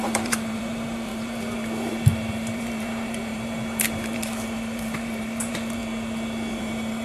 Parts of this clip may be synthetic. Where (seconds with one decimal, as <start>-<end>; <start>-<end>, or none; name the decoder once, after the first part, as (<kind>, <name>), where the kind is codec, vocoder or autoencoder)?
0.0-5.8 (vocoder, BigVGAN v2); 6.5-7.0